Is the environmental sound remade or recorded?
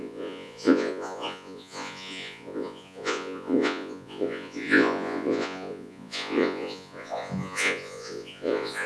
remade